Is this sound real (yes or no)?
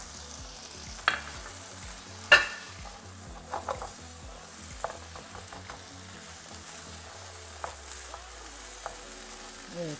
yes